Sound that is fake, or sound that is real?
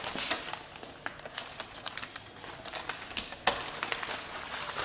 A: real